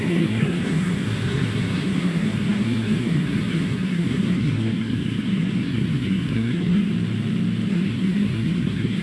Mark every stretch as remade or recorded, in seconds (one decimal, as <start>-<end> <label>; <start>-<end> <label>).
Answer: 0.0-6.9 remade; 6.9-7.7 recorded; 7.7-9.0 remade